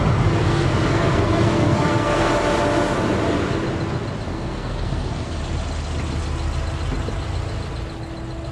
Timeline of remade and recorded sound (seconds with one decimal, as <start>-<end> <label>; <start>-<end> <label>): 0.0-0.4 recorded; 0.4-2.3 remade; 2.3-4.3 recorded; 4.3-5.4 remade; 5.4-8.5 recorded